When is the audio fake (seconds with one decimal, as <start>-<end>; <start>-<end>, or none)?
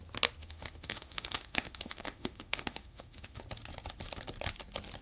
0.4-3.4